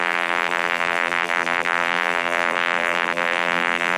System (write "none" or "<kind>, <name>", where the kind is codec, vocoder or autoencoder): vocoder, BigVGAN v2